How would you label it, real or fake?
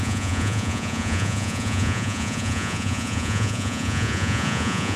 fake